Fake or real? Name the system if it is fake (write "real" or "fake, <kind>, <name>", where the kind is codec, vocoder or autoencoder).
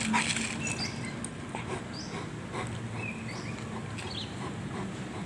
real